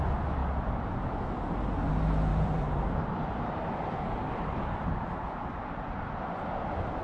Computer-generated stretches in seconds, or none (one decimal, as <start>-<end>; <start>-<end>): 2.3-4.3